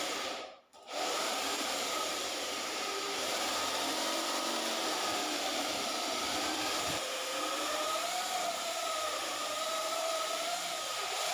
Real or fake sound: fake